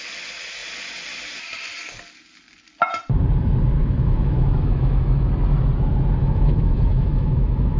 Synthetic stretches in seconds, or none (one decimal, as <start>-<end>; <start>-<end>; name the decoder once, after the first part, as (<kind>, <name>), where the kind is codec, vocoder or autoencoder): 3.8-5.3 (autoencoder, DAC-VAE); 6.2-7.8